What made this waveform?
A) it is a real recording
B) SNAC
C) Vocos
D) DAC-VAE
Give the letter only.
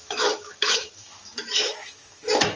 D